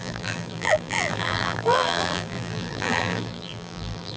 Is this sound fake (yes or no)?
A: yes